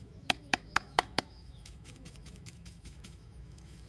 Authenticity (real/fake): fake